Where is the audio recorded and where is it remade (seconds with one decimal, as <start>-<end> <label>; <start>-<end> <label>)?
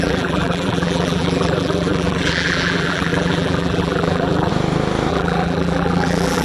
0.0-4.5 remade; 4.5-5.1 recorded; 5.1-6.4 remade